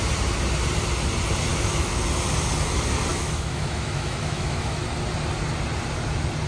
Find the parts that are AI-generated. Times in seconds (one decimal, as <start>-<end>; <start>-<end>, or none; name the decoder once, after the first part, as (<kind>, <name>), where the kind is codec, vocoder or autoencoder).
1.5-2.0 (autoencoder, DAC-VAE); 3.1-4.8